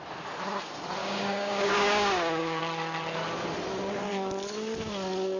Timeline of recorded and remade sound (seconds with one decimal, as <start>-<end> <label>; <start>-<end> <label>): 0.0-1.0 recorded; 1.0-2.6 remade; 2.6-5.4 recorded